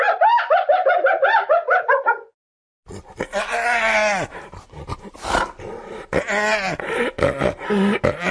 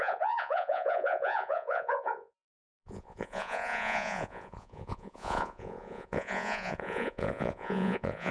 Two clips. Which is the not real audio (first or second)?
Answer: second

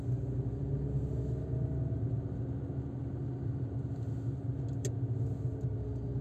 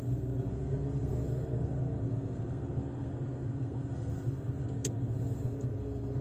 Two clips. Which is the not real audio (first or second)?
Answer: second